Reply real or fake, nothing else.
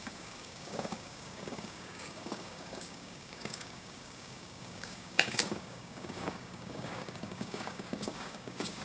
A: fake